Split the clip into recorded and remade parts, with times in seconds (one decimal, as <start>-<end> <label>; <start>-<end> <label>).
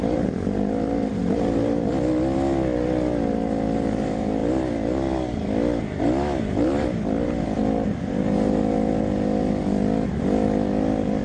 0.0-11.2 recorded